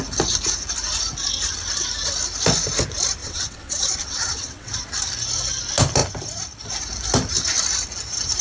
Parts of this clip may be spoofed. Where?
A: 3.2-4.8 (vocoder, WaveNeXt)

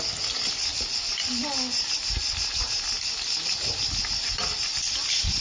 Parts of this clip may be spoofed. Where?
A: none

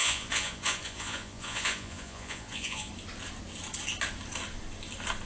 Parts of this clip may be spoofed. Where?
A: 0.0-2.9 (vocoder, Vocos)

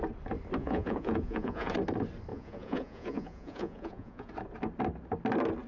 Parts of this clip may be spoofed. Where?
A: 0.6-1.7 (vocoder, Vocos); 2.3-4.3